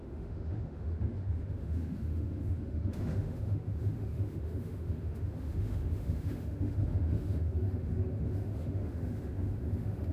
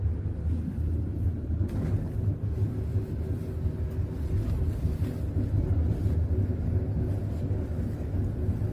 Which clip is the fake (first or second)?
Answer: first